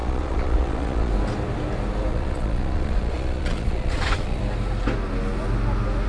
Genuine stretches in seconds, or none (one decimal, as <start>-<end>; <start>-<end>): 1.1-2.1; 4.4-6.1